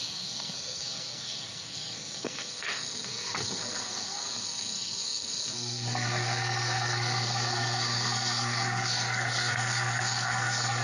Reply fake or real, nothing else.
fake